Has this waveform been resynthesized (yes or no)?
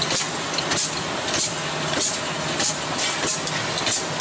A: no